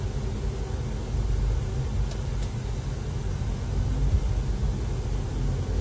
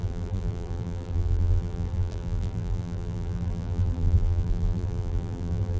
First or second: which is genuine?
first